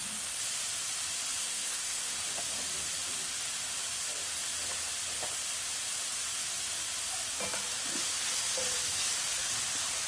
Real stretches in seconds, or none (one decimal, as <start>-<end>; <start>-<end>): 0.0-1.4; 2.2-10.1